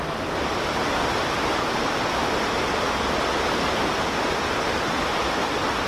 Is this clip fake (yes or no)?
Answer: no